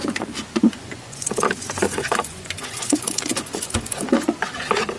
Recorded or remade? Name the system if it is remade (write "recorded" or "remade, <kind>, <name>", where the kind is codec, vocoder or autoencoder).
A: remade, vocoder, Vocos